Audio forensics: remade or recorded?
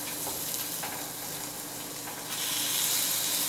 recorded